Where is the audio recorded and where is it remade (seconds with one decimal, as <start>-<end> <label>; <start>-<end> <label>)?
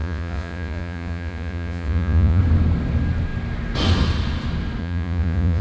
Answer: 0.0-2.4 remade; 2.4-4.8 recorded; 4.8-5.6 remade